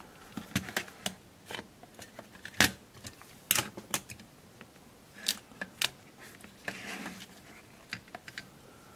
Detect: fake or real real